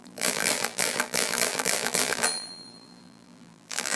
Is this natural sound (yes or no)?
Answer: no